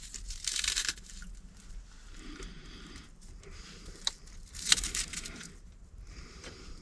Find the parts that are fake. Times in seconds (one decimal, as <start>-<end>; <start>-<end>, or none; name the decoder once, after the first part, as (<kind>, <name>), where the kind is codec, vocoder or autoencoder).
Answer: 0.0-1.2 (vocoder, BigVGAN v2); 2.0-6.8